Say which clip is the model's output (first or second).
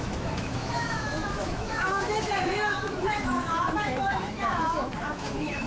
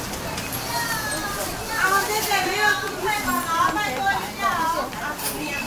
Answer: first